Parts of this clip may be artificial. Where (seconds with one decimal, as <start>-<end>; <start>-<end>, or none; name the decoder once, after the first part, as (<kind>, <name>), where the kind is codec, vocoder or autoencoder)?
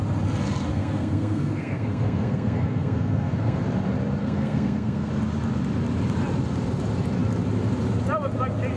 0.7-3.6 (codec, SNAC); 4.2-5.1